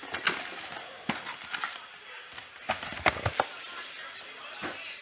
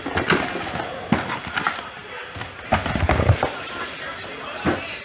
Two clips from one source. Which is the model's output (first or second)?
first